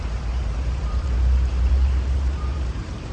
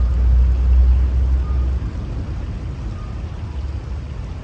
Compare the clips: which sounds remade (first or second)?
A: first